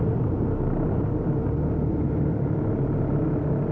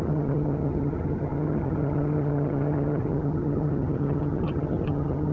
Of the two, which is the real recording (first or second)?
first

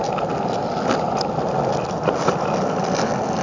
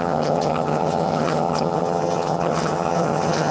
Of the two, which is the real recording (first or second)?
first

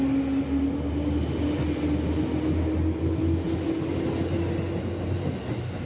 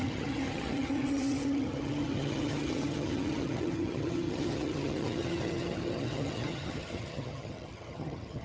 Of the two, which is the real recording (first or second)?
first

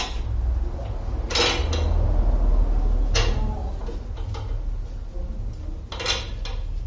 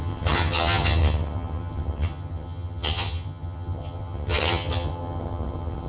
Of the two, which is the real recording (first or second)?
first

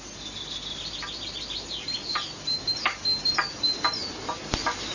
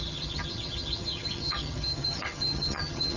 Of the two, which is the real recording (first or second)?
first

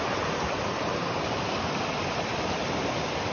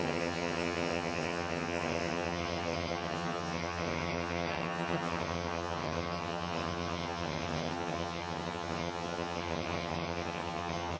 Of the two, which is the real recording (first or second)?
first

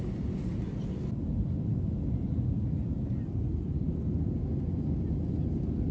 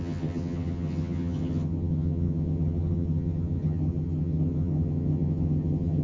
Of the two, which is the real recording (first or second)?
first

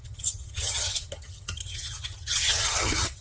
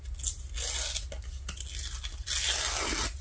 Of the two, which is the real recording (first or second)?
second